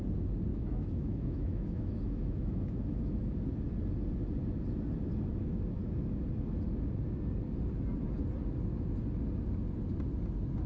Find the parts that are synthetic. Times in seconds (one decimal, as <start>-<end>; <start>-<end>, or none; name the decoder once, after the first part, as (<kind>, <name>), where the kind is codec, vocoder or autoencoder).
0.5-3.2 (autoencoder, DAC-VAE)